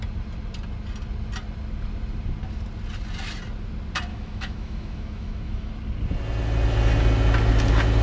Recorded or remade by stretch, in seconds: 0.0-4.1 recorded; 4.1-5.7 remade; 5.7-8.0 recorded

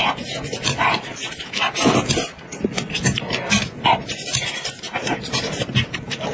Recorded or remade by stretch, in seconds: 0.0-6.3 recorded

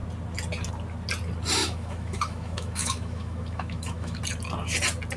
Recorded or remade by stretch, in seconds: 0.0-1.6 recorded; 1.6-4.2 remade; 4.2-5.2 recorded

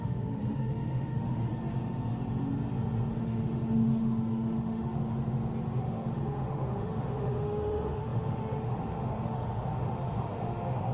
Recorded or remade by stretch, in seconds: 0.0-1.5 remade; 1.5-3.2 recorded; 3.2-5.0 remade; 5.0-5.8 recorded; 5.8-10.9 remade

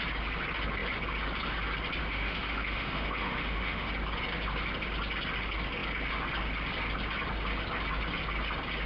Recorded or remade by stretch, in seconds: 0.0-2.0 recorded; 2.0-3.9 remade; 3.9-8.9 recorded

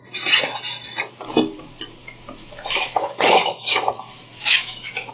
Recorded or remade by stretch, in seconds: 0.0-2.0 recorded; 2.0-5.1 remade

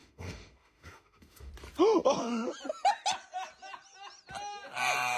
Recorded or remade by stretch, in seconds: 0.0-1.5 remade; 1.5-5.2 recorded